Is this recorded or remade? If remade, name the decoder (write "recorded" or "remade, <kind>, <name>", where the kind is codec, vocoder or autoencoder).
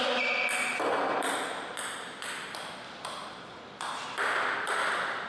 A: recorded